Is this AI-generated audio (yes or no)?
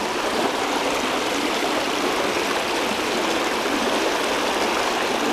no